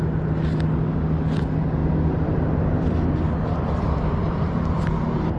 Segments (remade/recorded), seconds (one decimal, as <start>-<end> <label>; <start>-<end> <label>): 0.0-1.8 recorded; 1.8-5.0 remade; 5.0-5.4 recorded